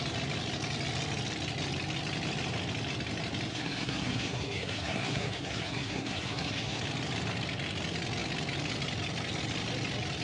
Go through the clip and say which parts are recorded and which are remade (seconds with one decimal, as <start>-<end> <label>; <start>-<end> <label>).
0.0-3.5 recorded; 3.5-6.8 remade; 6.8-10.2 recorded